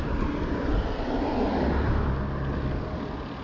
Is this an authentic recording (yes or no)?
yes